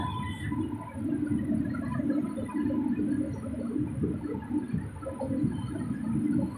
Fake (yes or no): no